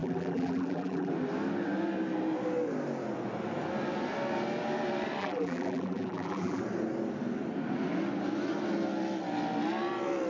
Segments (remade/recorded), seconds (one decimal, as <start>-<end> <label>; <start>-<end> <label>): 0.0-1.1 remade; 1.1-5.2 recorded; 5.2-6.6 remade; 6.6-10.3 recorded